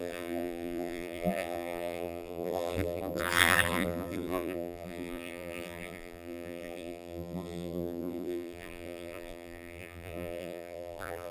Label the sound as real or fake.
fake